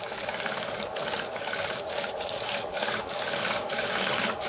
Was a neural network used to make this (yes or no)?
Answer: yes